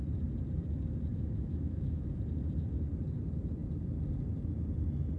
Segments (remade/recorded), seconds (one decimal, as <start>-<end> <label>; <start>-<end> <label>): 0.0-1.1 recorded; 1.1-2.1 remade; 2.1-5.2 recorded